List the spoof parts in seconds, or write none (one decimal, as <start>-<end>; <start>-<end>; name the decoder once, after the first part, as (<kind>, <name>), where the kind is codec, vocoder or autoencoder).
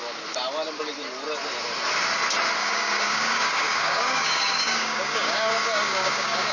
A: 2.6-6.5 (codec, DAC)